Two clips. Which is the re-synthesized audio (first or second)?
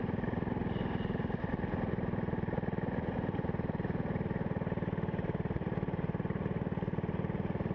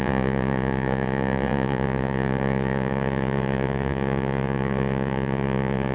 second